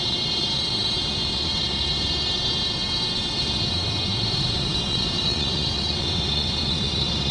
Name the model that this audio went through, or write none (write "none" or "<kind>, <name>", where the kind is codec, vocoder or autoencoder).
vocoder, WaveNeXt